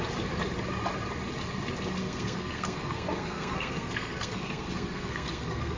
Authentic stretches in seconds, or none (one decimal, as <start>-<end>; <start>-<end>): 0.0-2.0